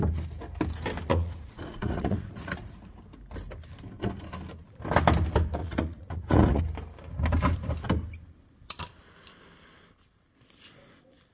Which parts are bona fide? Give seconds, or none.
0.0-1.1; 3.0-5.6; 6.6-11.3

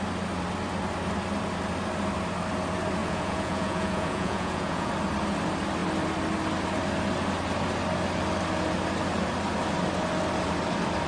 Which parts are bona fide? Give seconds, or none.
0.0-3.0; 4.9-11.1